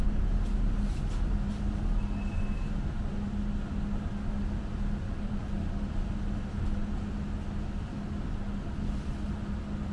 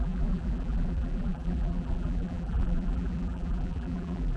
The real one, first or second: first